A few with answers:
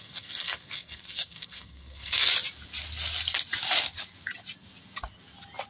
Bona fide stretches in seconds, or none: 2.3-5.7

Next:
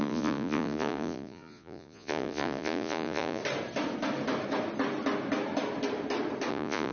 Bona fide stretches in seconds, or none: 3.4-6.5

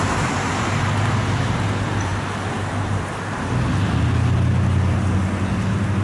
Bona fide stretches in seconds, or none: 0.0-6.0

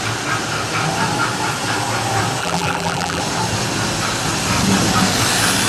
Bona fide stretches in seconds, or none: 0.0-2.4; 3.2-5.7

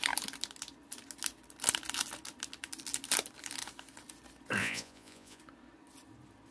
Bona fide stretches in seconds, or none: 0.0-4.6; 5.4-6.5

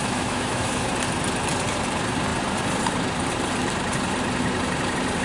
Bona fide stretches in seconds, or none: 0.9-5.2